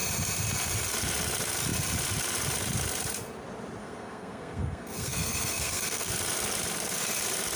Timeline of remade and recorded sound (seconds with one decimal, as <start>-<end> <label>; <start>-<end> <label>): 0.0-3.8 recorded; 3.8-6.1 remade; 6.1-7.6 recorded